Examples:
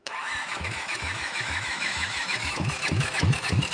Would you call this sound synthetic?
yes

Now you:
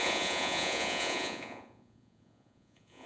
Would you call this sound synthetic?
yes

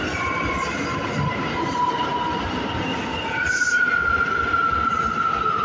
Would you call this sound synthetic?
no